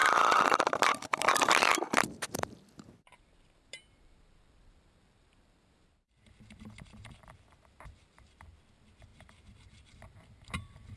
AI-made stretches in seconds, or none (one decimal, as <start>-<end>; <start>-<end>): 0.0-11.0